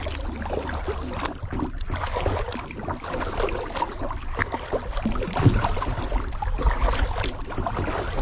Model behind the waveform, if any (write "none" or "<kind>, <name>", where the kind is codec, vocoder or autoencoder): none